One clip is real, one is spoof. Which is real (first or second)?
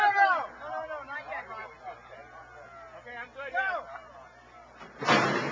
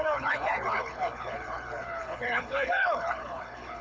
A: first